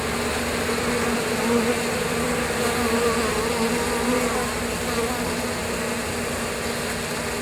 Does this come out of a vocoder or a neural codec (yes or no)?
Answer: no